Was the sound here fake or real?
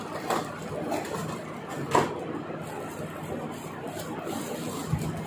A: real